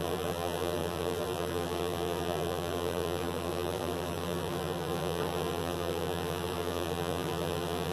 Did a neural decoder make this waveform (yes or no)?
yes